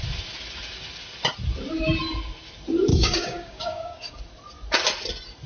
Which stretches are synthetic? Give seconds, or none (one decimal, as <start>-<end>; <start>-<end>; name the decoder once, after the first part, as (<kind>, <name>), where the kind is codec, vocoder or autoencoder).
2.9-4.2 (codec, DAC)